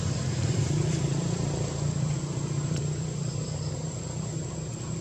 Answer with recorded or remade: remade